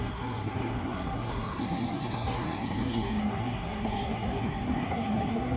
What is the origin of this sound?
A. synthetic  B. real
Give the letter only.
A